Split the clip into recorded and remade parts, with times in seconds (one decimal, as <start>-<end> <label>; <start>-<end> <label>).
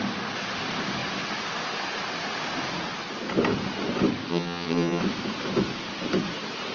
0.0-4.3 recorded; 4.3-5.0 remade; 5.0-6.7 recorded